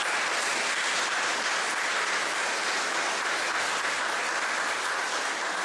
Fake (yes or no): no